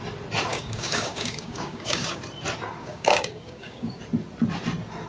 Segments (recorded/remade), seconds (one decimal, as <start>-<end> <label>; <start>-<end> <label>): 0.0-0.5 recorded; 0.5-2.2 remade; 2.2-2.8 recorded; 2.8-4.0 remade; 4.0-5.1 recorded